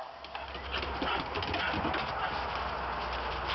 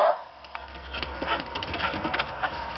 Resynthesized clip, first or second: second